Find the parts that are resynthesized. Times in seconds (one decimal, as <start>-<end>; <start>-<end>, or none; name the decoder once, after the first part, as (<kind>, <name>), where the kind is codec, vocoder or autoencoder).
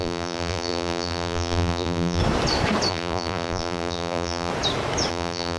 0.0-2.2 (vocoder, BigVGAN v2); 2.9-4.5; 5.1-5.6